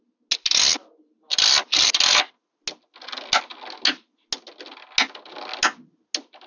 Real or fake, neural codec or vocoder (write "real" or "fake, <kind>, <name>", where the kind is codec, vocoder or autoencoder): real